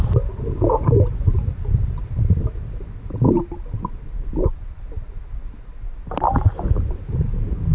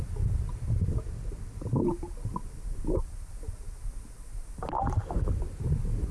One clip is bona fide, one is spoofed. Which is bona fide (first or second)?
second